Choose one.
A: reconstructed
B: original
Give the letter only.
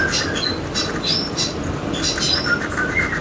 B